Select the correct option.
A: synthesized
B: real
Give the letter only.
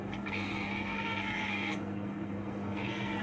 A